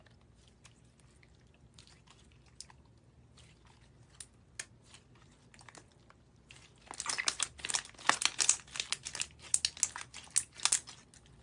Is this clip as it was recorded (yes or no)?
yes